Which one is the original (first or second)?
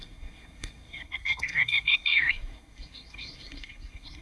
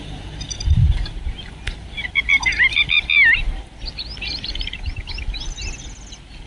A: second